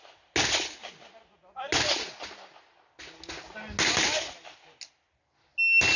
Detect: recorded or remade recorded